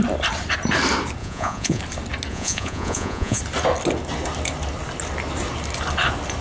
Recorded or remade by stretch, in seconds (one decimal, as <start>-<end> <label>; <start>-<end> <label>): 0.0-1.2 recorded; 1.2-1.8 remade; 1.8-2.3 recorded; 2.3-3.4 remade; 3.4-6.4 recorded